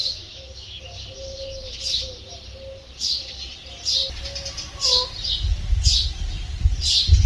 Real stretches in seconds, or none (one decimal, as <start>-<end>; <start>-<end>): 0.8-7.3